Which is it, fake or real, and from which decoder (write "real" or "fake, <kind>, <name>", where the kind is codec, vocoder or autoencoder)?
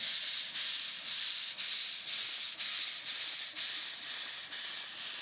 real